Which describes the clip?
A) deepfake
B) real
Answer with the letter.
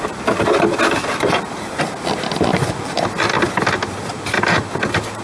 B